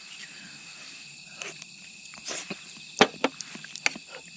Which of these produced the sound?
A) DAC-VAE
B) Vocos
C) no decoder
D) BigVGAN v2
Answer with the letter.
C